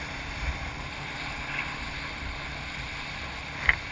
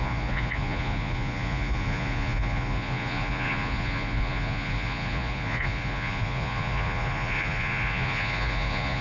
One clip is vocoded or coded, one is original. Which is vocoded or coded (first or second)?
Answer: second